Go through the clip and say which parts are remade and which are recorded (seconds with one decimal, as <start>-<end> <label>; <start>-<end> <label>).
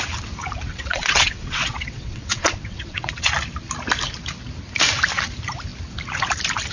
0.0-0.7 recorded; 0.7-3.3 remade; 3.3-6.7 recorded